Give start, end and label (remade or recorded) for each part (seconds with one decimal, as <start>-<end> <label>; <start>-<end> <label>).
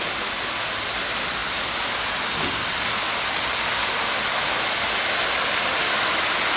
0.0-6.6 recorded